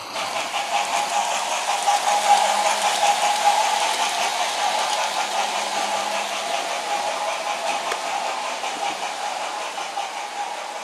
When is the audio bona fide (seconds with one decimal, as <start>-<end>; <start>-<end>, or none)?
1.6-7.7; 9.7-10.8